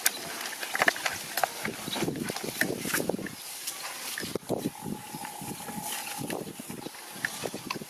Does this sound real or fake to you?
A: real